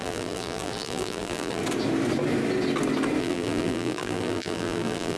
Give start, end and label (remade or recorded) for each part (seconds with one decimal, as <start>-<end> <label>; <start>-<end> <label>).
0.0-1.6 remade; 1.6-3.2 recorded; 3.2-5.2 remade